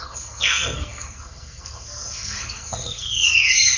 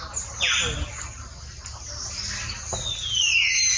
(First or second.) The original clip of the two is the second